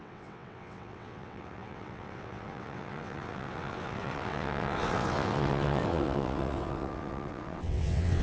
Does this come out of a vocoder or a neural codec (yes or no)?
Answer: yes